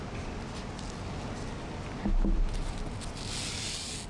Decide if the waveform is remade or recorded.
recorded